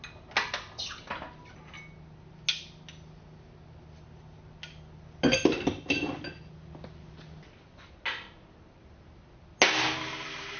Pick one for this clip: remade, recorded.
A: recorded